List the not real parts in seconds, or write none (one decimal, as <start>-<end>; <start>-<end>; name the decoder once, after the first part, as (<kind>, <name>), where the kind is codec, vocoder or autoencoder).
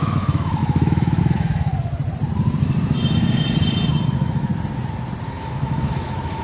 0.0-1.7 (autoencoder, DAC-VAE); 4.1-4.5; 5.2-6.4